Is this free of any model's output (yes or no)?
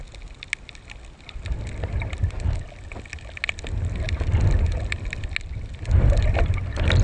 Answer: yes